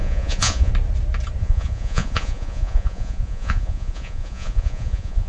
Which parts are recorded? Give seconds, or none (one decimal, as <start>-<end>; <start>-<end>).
0.7-1.4